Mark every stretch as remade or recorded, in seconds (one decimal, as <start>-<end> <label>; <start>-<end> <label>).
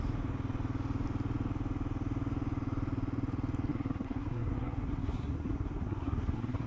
0.0-3.7 recorded; 3.7-6.7 remade